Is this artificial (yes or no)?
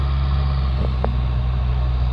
no